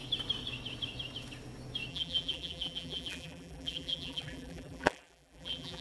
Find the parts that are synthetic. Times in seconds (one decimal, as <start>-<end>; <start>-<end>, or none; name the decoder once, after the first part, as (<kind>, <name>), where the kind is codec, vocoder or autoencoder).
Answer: 1.9-5.8 (vocoder, BigVGAN v2)